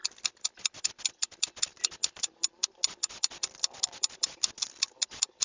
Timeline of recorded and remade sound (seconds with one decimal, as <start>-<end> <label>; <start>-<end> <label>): 0.0-5.4 recorded